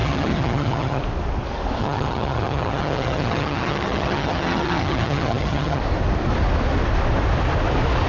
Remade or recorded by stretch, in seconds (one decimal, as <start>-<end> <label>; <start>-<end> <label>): 0.0-1.0 remade; 1.0-1.8 recorded; 1.8-5.8 remade; 5.8-8.1 recorded